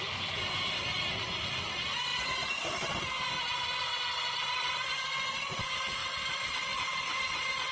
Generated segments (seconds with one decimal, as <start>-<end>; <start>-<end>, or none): 2.1-2.9; 6.0-7.2

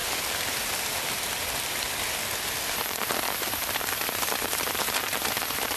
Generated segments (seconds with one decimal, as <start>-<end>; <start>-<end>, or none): 0.0-5.8

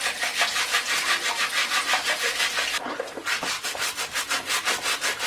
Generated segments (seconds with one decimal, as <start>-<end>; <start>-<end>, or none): 1.6-4.2

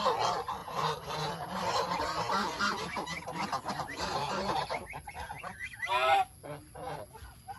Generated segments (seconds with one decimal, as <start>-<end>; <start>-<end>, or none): 0.6-5.1

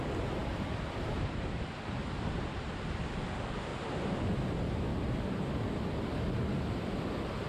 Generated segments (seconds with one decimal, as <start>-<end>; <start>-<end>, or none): 0.4-2.7; 3.7-4.2; 4.9-5.5

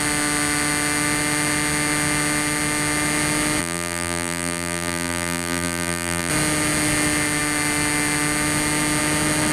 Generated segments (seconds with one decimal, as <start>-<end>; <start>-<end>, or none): 3.6-6.3